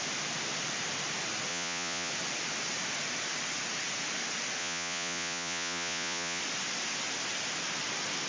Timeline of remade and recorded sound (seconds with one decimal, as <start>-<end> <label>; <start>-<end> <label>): 0.0-1.5 recorded; 1.5-2.1 remade; 2.1-4.6 recorded; 4.6-6.4 remade; 6.4-8.3 recorded